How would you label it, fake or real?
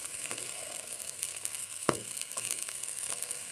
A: fake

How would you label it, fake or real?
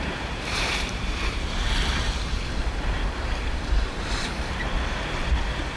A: fake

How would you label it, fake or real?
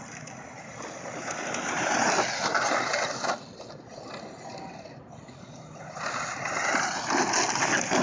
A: real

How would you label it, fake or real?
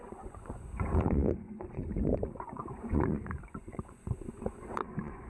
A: fake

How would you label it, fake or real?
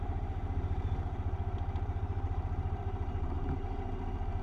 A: fake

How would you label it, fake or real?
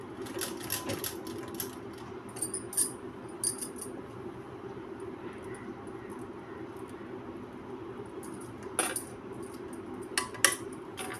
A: real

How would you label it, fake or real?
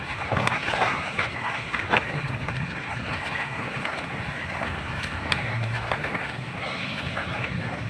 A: fake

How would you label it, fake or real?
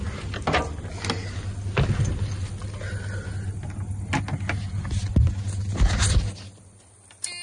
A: real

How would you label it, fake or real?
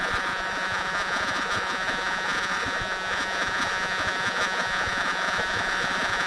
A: fake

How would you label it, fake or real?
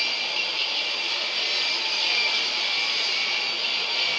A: real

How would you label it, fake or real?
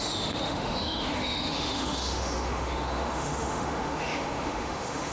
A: fake